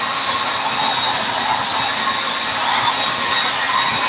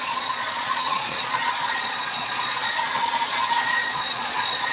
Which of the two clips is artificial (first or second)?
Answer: second